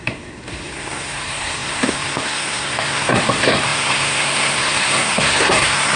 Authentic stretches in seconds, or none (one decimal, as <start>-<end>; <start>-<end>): none